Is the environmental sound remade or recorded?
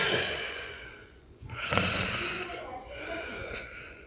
remade